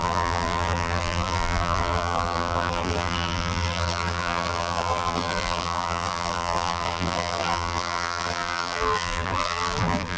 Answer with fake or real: fake